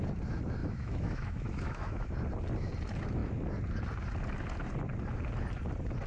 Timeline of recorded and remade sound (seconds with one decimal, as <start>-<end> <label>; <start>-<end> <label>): 0.0-0.6 recorded; 0.6-2.1 remade; 2.1-6.1 recorded